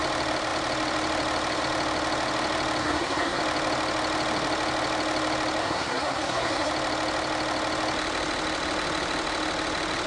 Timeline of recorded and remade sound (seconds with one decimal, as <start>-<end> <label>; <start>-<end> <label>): 0.0-2.8 recorded; 2.8-3.4 remade; 3.4-5.6 recorded; 5.6-6.7 remade; 6.7-10.1 recorded